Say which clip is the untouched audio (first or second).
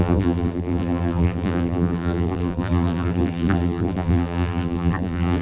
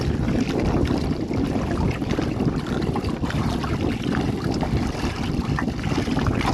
second